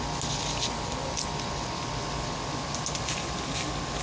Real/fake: real